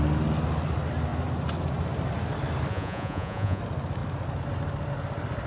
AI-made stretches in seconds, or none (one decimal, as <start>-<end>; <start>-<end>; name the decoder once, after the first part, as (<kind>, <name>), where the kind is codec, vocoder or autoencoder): 2.7-3.6 (vocoder, Vocos)